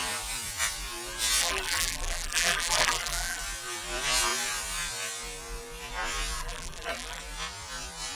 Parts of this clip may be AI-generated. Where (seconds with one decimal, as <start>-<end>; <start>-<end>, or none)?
1.4-3.4; 6.4-7.2